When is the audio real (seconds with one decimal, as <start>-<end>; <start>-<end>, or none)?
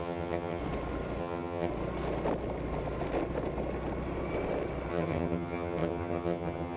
0.6-1.2; 1.7-4.9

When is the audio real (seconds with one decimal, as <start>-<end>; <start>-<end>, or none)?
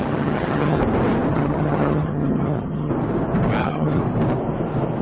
0.8-1.3; 2.9-3.6; 4.0-5.0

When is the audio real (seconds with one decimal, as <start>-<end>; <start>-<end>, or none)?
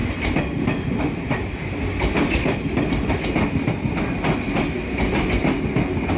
0.0-6.2